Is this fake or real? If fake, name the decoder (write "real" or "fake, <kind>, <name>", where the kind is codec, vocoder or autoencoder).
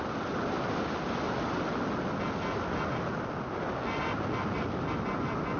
real